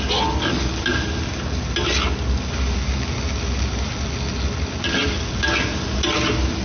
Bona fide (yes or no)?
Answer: yes